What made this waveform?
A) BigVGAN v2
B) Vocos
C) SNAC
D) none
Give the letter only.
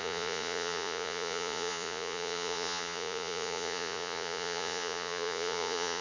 B